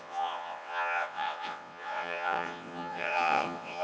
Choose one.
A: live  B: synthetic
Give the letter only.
B